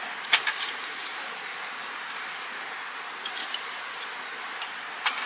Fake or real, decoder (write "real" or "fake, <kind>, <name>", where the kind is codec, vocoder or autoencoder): real